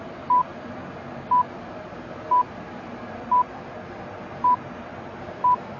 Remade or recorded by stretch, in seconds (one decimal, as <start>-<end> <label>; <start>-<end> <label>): 0.0-5.8 recorded